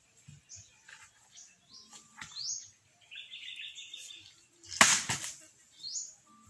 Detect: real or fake real